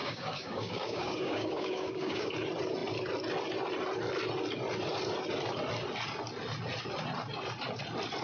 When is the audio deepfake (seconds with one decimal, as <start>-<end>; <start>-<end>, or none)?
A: 0.0-2.3